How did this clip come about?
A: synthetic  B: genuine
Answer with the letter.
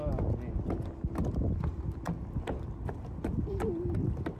B